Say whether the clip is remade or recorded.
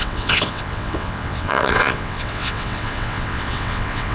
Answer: remade